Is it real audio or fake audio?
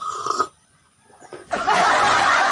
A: fake